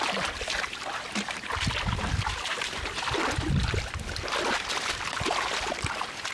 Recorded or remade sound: recorded